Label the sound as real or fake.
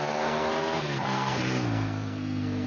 fake